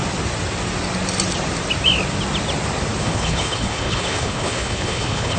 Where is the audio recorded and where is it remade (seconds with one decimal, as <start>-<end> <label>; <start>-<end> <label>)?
0.0-3.0 recorded; 3.0-5.4 remade